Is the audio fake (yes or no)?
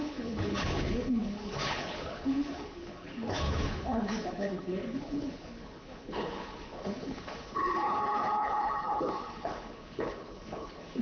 yes